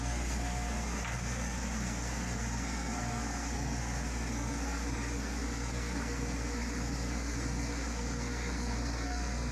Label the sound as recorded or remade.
remade